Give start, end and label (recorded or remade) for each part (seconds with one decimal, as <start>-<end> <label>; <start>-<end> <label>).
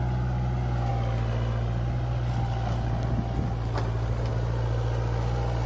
0.0-5.7 recorded